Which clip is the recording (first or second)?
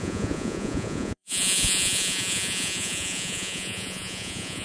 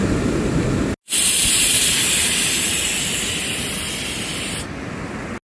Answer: second